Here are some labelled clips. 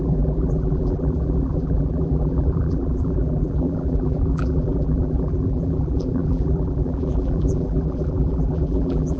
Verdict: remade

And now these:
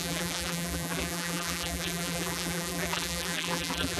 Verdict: remade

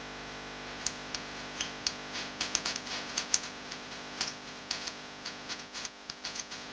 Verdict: recorded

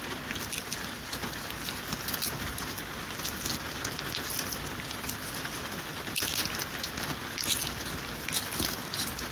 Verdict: recorded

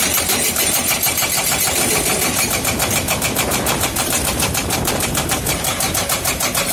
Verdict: remade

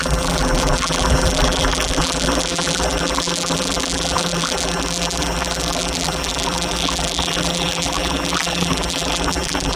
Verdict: remade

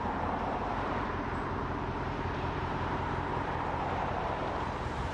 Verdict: remade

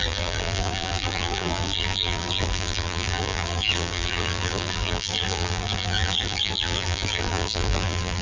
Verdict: remade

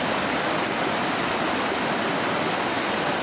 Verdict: recorded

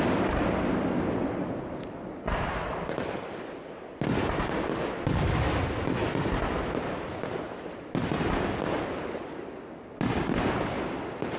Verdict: recorded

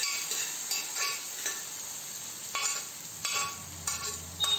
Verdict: recorded